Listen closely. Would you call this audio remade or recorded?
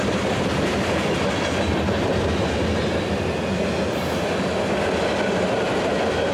recorded